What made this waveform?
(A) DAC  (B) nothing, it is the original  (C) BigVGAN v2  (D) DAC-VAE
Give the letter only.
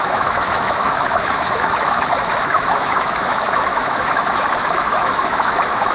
D